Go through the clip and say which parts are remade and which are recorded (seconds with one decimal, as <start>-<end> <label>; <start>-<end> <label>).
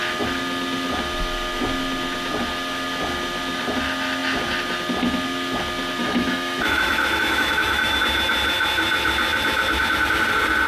0.0-6.0 recorded; 6.0-8.0 remade; 8.0-10.7 recorded